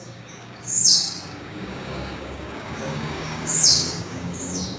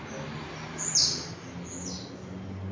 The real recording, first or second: second